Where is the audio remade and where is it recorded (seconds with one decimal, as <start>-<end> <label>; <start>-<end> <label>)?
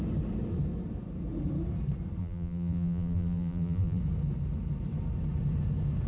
0.0-2.2 recorded; 2.2-4.0 remade; 4.0-6.1 recorded